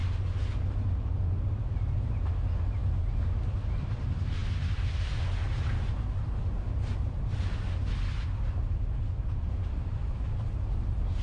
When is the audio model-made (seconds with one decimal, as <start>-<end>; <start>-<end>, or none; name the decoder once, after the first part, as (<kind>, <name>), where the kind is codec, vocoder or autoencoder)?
none